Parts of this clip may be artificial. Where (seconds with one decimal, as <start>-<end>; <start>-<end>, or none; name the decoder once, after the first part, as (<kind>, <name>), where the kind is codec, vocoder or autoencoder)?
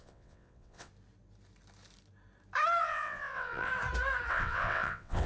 0.0-0.9 (vocoder, WaveNeXt); 2.8-3.7; 4.3-5.3